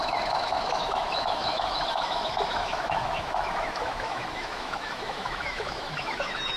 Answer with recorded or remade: remade